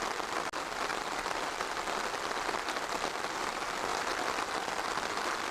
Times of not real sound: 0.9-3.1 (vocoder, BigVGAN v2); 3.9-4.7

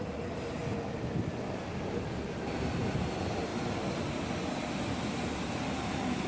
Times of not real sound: 3.5-4.0 (vocoder, BigVGAN v2)

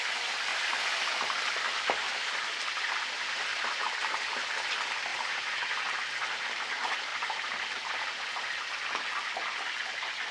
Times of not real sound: 3.5-4.4 (vocoder, BigVGAN v2); 5.1-5.6; 7.1-7.8

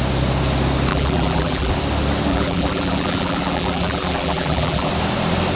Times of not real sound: 0.9-1.7 (vocoder, BigVGAN v2); 2.3-4.9

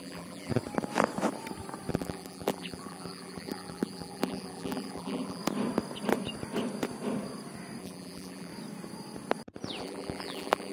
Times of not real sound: 0.0-0.5 (vocoder, BigVGAN v2); 1.9-5.4; 7.8-8.5; 9.8-10.7

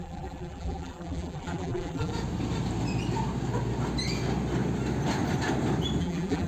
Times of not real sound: 0.0-2.1 (vocoder, BigVGAN v2); 6.0-6.5